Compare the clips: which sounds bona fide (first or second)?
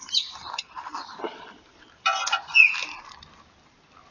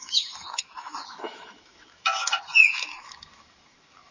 first